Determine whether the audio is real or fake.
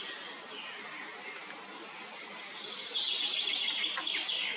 real